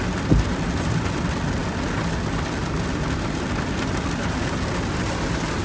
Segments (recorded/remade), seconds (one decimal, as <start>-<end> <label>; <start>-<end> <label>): 0.0-5.6 recorded